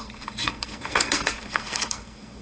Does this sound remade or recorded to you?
remade